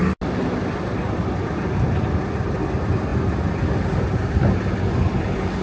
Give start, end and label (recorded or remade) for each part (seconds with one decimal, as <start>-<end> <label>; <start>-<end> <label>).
0.0-5.6 recorded